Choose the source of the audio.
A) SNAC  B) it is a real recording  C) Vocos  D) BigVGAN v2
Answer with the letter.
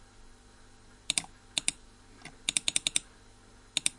B